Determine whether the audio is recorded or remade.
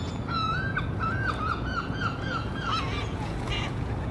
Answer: remade